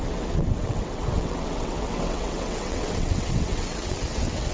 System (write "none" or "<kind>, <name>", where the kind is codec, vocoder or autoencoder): vocoder, WaveNeXt